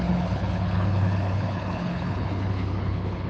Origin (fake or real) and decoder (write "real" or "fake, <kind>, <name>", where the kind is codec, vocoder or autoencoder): fake, codec, HILCodec